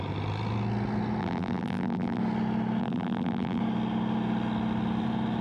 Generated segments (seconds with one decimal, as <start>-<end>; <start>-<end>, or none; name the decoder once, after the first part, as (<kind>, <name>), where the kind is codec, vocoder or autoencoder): 1.2-2.2 (vocoder, BigVGAN v2); 2.8-3.6